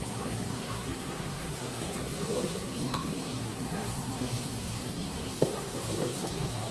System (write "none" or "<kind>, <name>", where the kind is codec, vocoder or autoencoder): codec, SNAC